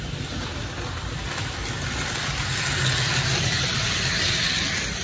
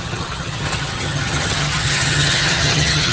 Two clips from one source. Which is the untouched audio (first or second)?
first